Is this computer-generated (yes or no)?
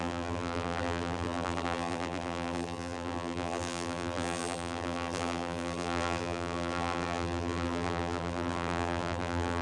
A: yes